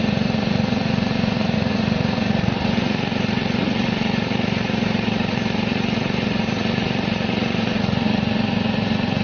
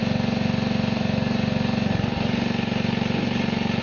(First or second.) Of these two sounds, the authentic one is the second